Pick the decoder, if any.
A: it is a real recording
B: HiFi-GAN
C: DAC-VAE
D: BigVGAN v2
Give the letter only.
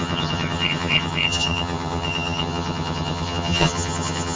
B